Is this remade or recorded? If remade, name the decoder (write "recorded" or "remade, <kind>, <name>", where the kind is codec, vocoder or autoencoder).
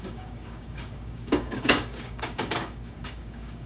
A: remade, codec, DAC